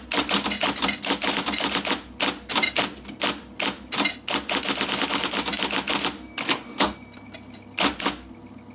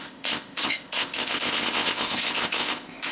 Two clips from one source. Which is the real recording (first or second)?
first